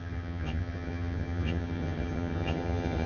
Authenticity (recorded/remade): remade